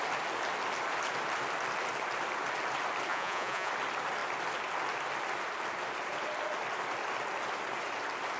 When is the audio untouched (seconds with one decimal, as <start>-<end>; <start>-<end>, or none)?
0.0-3.1; 3.7-8.4